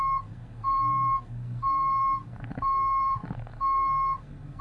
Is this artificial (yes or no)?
yes